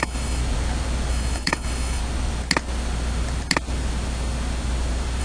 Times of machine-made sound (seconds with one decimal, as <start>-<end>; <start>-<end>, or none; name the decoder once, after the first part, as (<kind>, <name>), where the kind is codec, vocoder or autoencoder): 0.0-0.4 (autoencoder, DAC-VAE); 1.1-2.0